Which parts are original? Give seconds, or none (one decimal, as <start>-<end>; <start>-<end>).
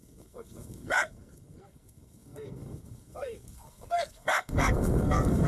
none